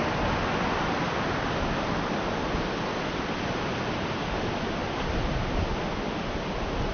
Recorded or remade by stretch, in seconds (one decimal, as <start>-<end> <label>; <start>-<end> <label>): 0.0-6.9 recorded